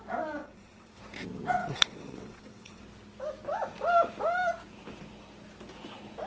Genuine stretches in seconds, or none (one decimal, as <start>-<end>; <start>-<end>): 0.0-0.4; 1.0-1.6; 2.8-6.3